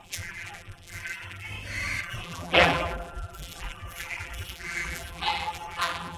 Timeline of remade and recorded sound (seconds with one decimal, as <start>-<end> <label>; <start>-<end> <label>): 0.0-1.5 remade; 1.5-2.0 recorded; 2.0-6.2 remade